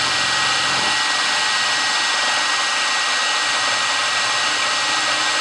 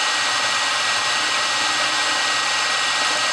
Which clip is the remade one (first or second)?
second